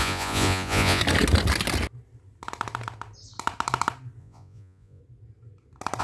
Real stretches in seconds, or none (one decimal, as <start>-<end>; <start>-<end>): 1.0-4.2; 5.0-6.0